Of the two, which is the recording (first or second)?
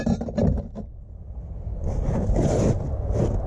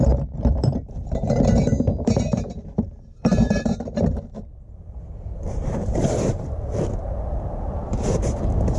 first